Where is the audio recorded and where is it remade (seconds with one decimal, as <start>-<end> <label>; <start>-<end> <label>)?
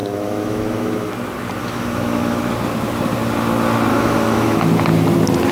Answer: 0.0-1.1 remade; 1.1-1.6 recorded; 1.6-2.4 remade; 2.4-3.9 recorded; 3.9-4.6 remade; 4.6-5.5 recorded